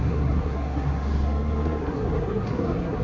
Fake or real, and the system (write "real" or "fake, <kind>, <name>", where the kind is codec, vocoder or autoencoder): fake, codec, SNAC